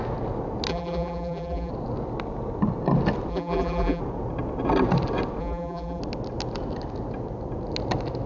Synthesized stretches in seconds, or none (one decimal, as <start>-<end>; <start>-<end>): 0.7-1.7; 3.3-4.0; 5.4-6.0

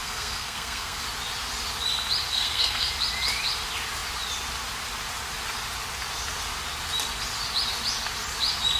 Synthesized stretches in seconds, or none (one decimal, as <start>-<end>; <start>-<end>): 0.0-1.0; 2.3-2.9

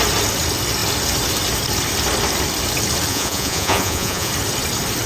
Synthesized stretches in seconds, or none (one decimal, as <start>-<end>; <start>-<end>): 3.1-4.3

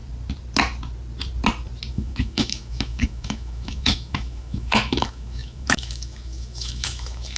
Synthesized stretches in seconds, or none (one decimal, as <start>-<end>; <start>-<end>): 1.9-7.4

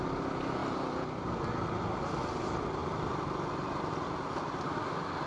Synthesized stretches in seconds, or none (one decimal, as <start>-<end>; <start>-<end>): none

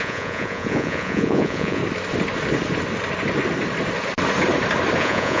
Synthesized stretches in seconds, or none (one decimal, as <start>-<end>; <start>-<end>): 0.0-1.8; 5.0-5.4

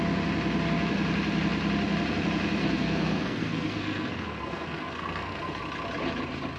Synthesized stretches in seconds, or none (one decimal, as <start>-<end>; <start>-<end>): 2.6-5.6

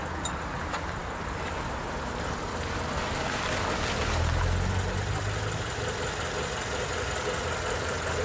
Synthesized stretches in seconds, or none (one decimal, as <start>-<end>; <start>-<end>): none